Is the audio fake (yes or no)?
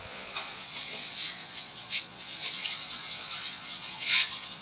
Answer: yes